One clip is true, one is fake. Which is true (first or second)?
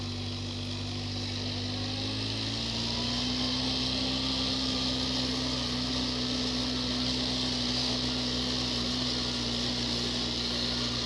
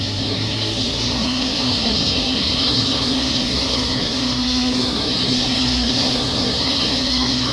first